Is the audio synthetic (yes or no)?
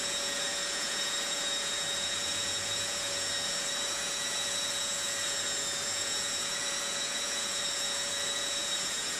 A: yes